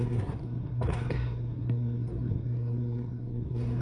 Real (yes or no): no